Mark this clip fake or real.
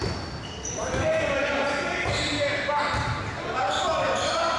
real